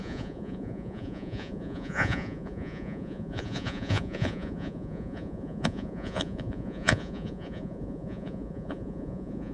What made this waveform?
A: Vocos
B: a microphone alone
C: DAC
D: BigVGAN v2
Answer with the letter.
A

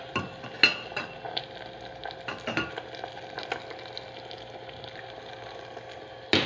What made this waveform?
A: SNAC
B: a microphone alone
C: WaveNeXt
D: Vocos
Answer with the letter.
B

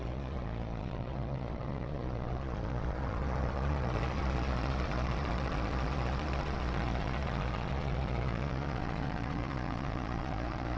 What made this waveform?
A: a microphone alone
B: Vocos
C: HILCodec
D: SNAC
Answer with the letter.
B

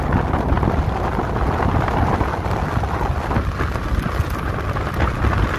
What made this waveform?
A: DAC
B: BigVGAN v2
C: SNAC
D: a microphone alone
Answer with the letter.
D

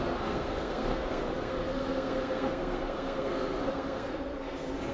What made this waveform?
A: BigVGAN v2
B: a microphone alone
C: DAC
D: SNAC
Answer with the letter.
D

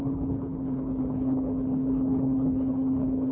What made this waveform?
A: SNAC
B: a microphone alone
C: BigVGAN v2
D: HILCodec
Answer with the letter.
D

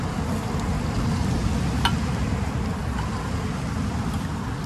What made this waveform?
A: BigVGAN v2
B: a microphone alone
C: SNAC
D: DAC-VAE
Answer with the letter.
B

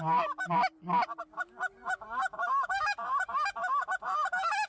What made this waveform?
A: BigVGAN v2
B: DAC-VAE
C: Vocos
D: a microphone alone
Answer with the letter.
D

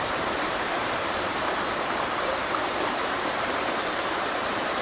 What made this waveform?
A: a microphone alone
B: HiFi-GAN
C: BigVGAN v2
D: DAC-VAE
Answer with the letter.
C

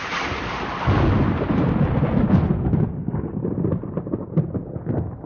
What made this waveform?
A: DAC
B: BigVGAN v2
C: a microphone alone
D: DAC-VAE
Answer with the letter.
C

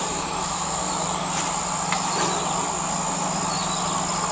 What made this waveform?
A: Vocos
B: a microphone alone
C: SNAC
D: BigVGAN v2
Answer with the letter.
B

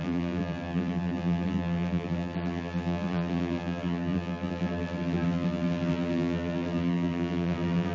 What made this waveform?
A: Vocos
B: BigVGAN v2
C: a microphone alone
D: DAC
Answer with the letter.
B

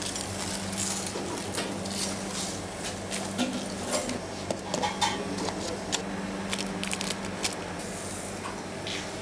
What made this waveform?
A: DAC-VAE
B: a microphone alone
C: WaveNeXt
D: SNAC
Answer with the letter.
B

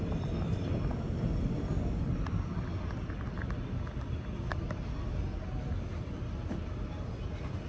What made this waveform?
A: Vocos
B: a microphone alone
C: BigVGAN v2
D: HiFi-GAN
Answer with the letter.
B